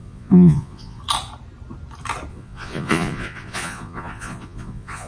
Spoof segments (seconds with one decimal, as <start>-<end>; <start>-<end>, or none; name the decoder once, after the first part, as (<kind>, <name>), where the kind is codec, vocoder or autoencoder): 0.0-1.0 (vocoder, Vocos); 2.3-5.1